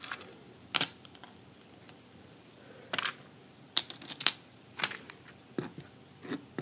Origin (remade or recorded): recorded